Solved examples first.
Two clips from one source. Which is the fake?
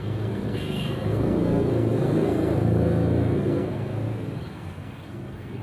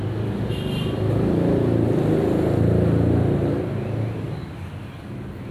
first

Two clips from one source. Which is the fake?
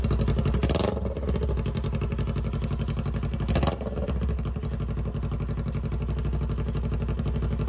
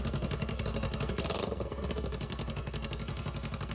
second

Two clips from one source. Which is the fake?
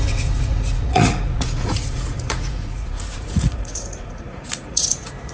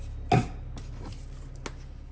first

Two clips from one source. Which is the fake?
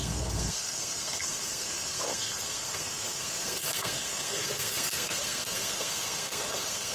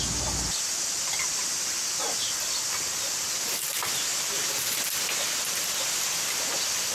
first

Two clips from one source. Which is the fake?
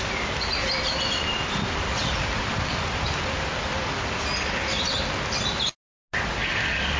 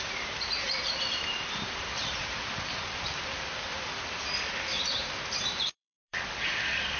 second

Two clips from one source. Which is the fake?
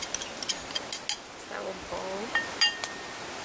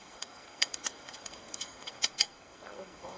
second